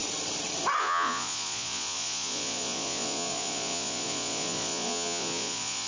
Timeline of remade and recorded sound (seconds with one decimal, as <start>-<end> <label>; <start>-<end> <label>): 0.0-0.8 recorded; 0.8-5.9 remade